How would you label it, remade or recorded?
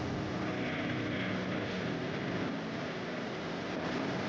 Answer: recorded